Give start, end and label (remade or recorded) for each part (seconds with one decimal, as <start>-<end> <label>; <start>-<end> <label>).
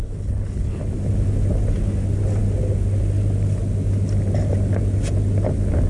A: 0.0-0.8 remade; 0.8-5.9 recorded